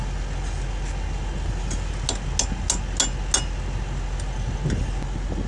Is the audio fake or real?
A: real